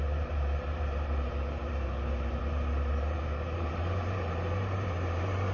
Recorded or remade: remade